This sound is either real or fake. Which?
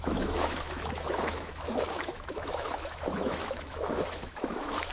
fake